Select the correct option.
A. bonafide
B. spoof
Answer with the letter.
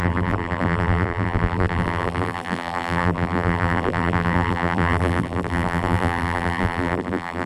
B